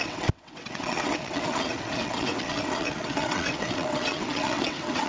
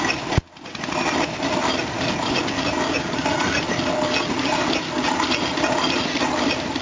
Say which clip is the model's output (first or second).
first